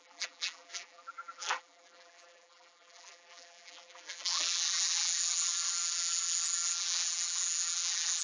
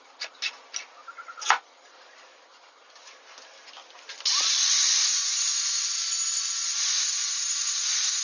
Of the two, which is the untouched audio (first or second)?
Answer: second